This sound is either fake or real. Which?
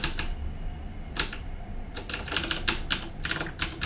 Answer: real